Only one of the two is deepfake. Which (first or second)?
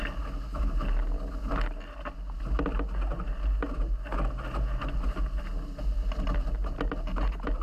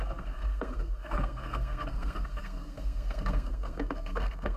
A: second